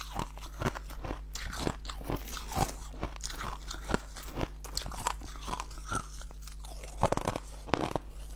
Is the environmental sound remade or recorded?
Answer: recorded